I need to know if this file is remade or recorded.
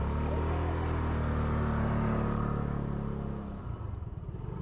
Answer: recorded